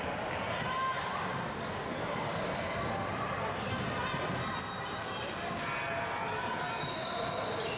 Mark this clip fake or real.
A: real